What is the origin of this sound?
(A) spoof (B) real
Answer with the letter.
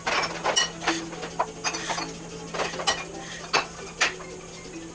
B